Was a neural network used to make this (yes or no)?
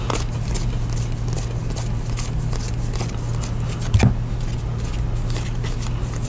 no